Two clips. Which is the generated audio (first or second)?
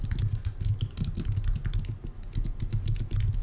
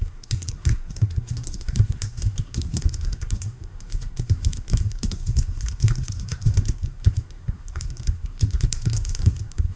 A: second